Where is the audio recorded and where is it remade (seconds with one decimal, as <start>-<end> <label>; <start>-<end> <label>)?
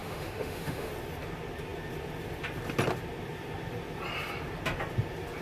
0.0-0.9 remade; 0.9-5.4 recorded